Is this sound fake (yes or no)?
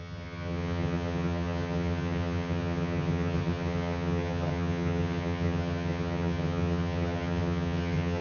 yes